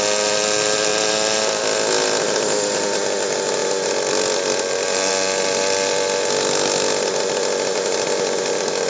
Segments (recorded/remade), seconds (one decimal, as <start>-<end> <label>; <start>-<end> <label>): 0.0-0.9 recorded; 0.9-1.6 remade; 1.6-3.6 recorded; 3.6-5.1 remade; 5.1-8.9 recorded